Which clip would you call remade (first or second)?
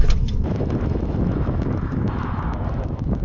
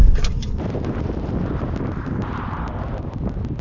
first